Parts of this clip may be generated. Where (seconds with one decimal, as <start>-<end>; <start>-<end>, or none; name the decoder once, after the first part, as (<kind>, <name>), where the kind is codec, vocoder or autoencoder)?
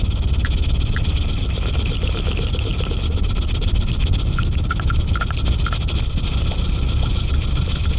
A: none